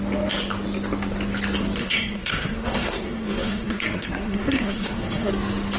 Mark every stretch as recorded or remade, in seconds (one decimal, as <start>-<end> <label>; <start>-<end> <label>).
0.0-1.8 recorded; 1.8-5.3 remade; 5.3-5.8 recorded